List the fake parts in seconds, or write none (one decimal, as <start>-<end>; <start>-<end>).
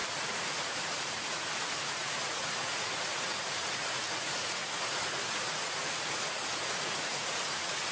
0.0-7.9